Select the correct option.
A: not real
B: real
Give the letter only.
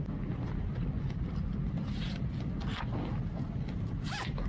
B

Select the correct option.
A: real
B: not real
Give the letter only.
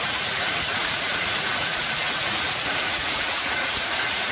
B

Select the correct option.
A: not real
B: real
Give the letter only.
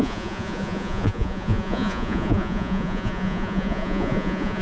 A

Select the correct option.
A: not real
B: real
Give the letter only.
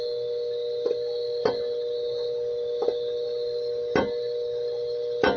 B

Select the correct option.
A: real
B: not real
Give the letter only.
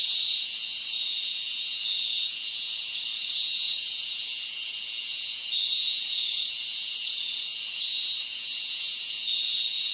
B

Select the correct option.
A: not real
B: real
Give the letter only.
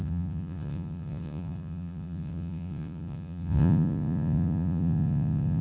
A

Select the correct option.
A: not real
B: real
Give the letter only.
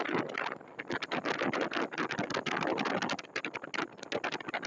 B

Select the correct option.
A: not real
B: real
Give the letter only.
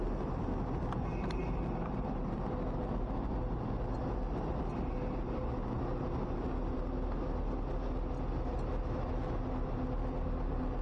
B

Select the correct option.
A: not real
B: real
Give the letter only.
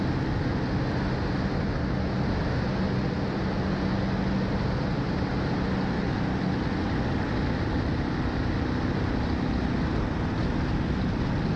B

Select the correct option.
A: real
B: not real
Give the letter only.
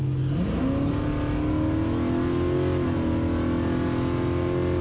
A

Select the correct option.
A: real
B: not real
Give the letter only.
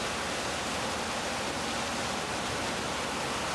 A